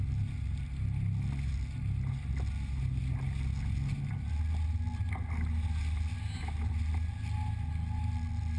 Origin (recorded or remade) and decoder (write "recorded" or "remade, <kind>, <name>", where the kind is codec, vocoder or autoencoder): recorded